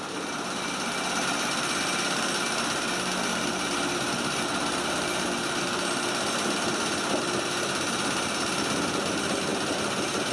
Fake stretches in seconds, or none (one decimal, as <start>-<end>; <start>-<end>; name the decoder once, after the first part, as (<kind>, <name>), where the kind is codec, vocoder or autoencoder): none

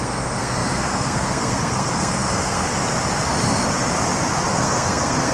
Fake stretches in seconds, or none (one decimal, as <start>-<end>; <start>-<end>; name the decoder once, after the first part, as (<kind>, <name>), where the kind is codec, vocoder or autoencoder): 0.0-2.7 (codec, SNAC); 4.5-5.3

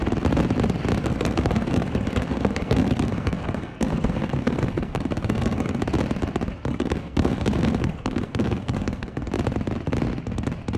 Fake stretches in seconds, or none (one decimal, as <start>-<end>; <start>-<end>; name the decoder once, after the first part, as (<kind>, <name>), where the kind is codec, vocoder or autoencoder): 1.0-5.8 (codec, SNAC); 6.7-9.3